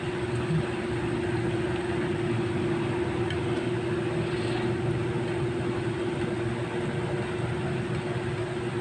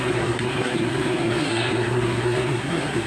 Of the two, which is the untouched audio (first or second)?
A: first